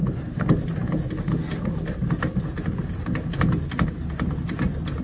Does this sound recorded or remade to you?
recorded